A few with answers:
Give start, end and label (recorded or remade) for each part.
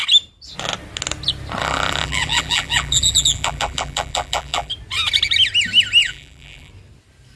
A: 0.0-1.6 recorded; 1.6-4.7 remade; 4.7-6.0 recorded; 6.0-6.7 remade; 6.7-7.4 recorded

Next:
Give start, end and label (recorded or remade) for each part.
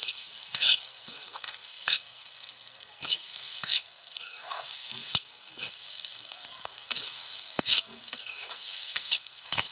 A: 0.0-9.7 remade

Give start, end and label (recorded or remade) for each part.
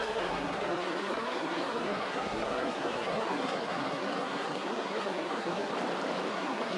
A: 0.0-5.7 remade; 5.7-6.3 recorded; 6.3-6.8 remade